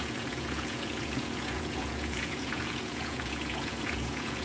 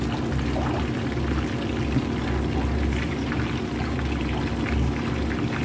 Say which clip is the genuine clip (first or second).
second